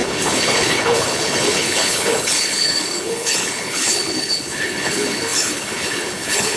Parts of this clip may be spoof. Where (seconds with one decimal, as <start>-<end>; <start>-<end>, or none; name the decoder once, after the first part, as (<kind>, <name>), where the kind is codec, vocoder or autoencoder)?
0.0-6.6 (codec, HILCodec)